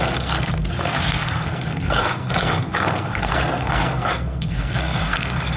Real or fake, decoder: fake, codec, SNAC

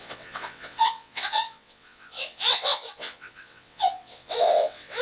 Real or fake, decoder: fake, vocoder, WaveNeXt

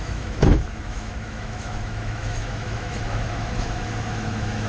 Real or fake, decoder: fake, autoencoder, DAC-VAE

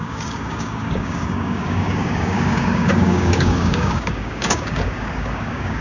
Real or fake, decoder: fake, codec, DAC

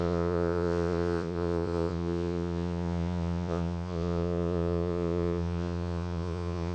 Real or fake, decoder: fake, vocoder, Vocos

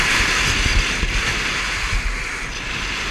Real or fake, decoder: real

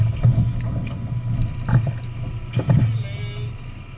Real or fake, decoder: real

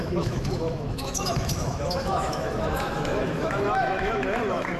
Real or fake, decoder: fake, autoencoder, DAC-VAE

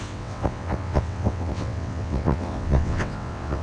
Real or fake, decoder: fake, vocoder, WaveNeXt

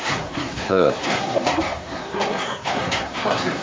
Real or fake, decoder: fake, codec, SNAC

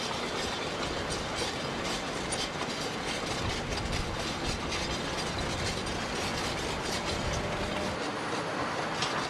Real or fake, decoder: real